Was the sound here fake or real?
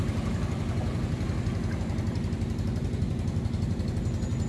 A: real